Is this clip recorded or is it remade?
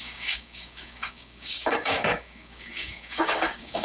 remade